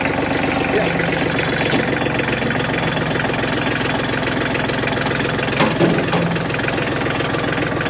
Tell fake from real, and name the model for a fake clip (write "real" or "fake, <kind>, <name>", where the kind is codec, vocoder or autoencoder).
real